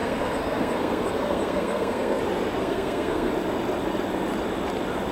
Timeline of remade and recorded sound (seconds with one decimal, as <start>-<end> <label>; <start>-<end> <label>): 0.0-2.2 remade; 2.2-2.6 recorded; 2.6-3.3 remade; 3.3-5.1 recorded